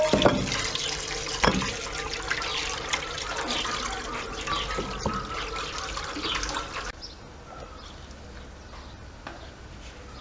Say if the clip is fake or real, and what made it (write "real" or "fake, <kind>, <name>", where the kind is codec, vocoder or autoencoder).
real